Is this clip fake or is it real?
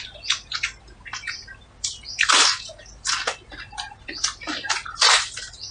real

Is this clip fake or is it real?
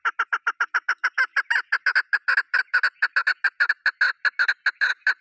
real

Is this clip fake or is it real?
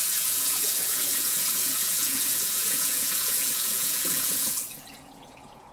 fake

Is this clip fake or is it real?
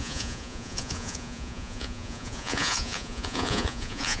fake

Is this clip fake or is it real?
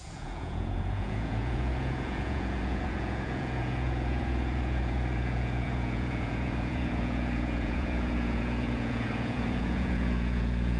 fake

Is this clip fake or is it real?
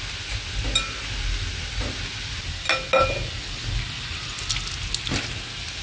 real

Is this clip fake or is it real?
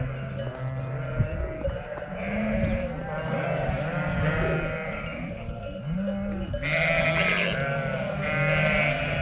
real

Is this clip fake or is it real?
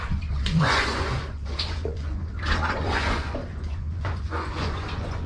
fake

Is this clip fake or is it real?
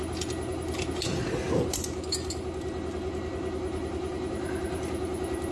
real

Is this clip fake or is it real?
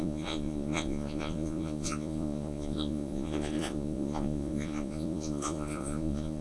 fake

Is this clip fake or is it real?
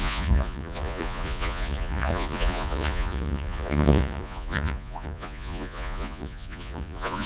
fake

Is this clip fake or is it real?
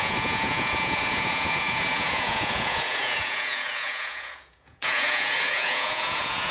fake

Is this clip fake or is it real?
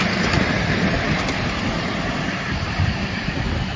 real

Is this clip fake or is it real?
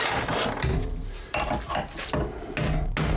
real